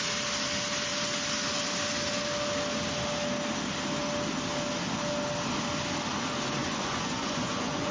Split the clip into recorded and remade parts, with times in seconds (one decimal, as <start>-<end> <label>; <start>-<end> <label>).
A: 0.0-6.6 recorded; 6.6-7.9 remade